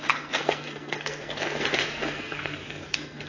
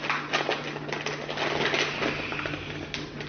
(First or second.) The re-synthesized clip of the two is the first